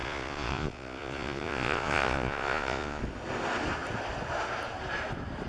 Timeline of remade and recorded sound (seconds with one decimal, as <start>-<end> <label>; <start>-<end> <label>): 0.0-3.0 remade; 3.0-5.5 recorded

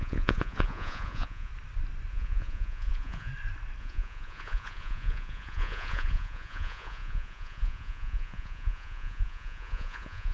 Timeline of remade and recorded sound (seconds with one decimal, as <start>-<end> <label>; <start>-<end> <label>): 0.0-1.5 remade; 1.5-2.1 recorded; 2.1-3.3 remade; 3.3-3.8 recorded; 3.8-10.3 remade

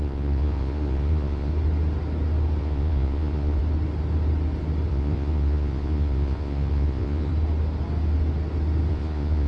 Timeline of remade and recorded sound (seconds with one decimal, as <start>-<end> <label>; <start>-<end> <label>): 0.0-1.5 remade; 1.5-2.6 recorded; 2.6-3.6 remade; 3.6-4.9 recorded; 4.9-7.3 remade; 7.3-8.9 recorded; 8.9-9.5 remade

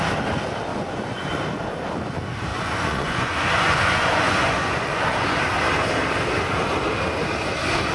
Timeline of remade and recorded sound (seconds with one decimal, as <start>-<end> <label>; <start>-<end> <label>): 0.0-0.7 recorded; 0.7-1.4 remade; 1.4-2.5 recorded; 2.5-5.4 remade; 5.4-7.9 recorded

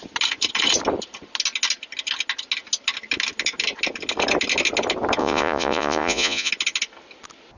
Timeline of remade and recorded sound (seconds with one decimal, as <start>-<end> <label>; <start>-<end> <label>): 0.0-5.2 recorded; 5.2-6.5 remade; 6.5-7.6 recorded

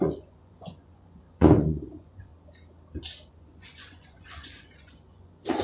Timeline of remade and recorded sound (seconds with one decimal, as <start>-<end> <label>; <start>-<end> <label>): 0.0-2.3 remade; 2.3-3.3 recorded; 3.3-5.6 remade

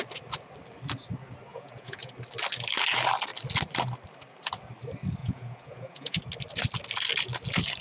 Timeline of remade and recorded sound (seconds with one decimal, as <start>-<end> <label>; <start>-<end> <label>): 0.0-1.5 recorded; 1.5-2.1 remade; 2.1-5.2 recorded; 5.2-6.2 remade; 6.2-7.8 recorded